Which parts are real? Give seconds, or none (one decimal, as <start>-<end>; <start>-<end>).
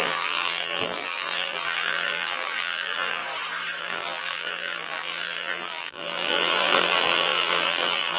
3.2-3.8